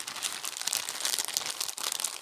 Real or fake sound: real